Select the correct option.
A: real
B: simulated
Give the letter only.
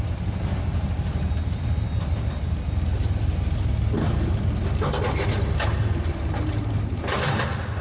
A